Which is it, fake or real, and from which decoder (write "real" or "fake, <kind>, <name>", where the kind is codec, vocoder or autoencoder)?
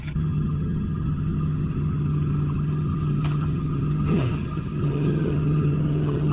fake, vocoder, HiFi-GAN